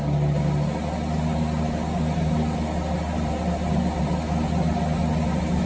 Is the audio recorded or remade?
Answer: recorded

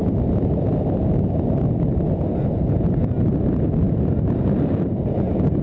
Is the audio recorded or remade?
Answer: recorded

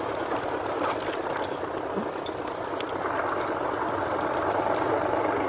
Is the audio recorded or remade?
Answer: recorded